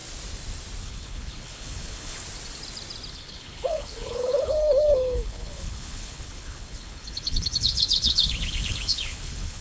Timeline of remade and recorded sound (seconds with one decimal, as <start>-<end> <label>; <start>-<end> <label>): 0.0-0.8 recorded; 0.8-2.2 remade; 2.2-3.1 recorded; 3.1-9.6 remade